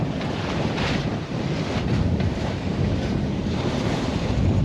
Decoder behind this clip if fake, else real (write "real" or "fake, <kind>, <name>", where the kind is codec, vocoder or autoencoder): fake, vocoder, BigVGAN v2